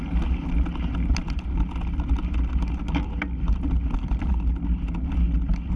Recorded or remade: recorded